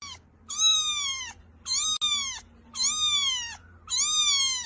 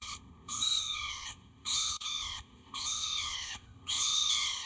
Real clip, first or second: first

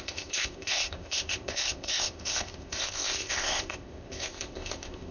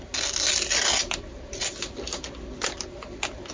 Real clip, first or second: second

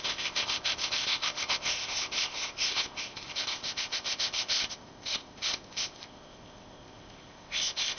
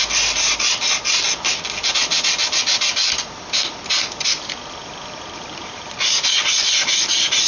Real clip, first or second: second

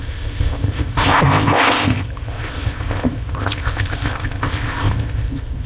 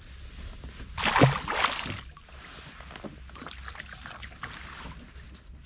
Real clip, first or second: second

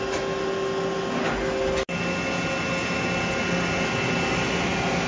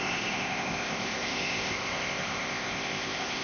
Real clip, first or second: first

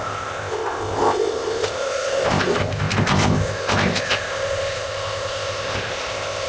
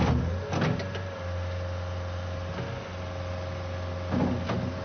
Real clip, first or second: second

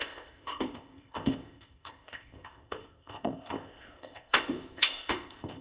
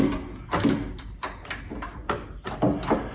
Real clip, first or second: second